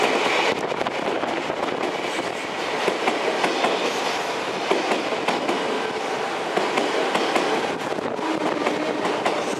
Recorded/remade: recorded